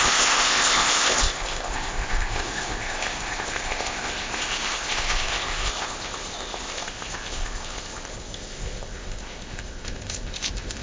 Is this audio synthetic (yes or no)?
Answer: yes